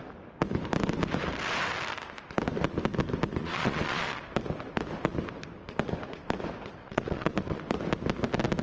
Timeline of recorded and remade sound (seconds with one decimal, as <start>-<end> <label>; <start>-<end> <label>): 0.0-3.4 recorded; 3.4-4.2 remade; 4.2-6.8 recorded; 6.8-7.6 remade; 7.6-8.6 recorded